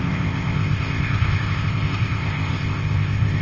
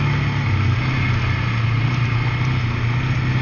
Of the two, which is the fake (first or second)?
first